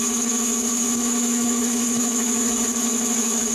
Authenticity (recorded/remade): remade